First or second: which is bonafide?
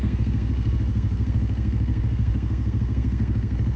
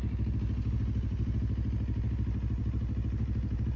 second